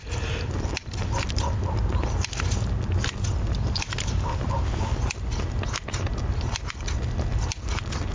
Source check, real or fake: real